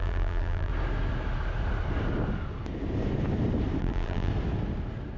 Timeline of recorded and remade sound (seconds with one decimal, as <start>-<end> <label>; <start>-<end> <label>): 0.0-0.7 remade; 0.7-3.8 recorded; 3.8-4.3 remade; 4.3-5.2 recorded